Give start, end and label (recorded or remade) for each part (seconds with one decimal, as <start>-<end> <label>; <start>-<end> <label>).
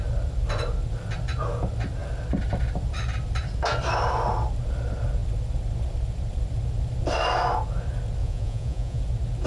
0.0-8.2 recorded; 8.2-9.0 remade; 9.0-9.5 recorded